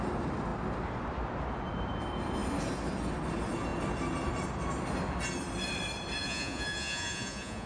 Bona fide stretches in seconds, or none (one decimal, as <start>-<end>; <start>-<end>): 0.0-6.2